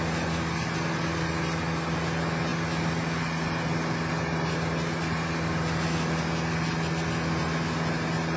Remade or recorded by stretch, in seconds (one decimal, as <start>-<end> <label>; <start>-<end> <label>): 0.0-8.4 recorded